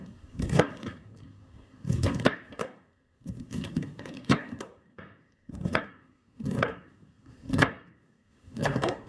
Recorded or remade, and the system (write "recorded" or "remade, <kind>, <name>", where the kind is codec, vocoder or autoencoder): remade, codec, SNAC